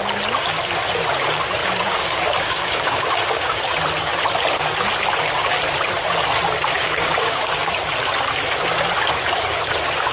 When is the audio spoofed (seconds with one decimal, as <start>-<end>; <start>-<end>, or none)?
1.6-3.6; 6.7-7.7